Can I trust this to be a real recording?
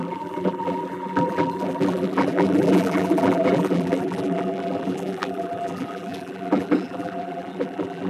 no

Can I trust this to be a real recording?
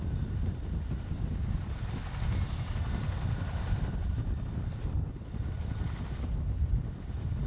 yes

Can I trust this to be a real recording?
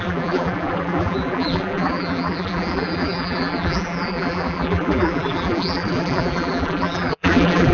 no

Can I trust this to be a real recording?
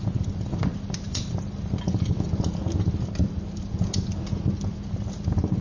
no